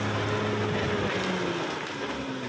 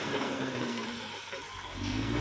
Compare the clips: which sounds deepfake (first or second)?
second